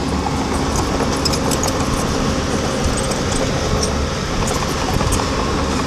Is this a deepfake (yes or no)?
no